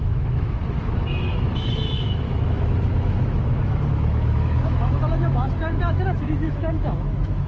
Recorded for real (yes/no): no